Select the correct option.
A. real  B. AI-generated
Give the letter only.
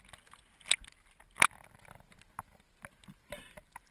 A